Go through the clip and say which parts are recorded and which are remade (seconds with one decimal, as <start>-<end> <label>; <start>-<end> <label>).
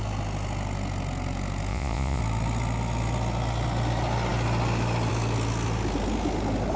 0.0-1.7 recorded; 1.7-2.2 remade; 2.2-6.8 recorded